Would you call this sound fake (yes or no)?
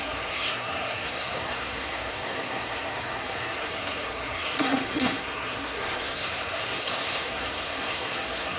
yes